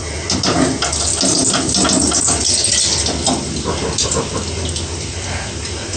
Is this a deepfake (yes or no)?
no